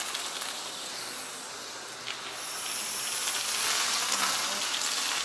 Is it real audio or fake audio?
real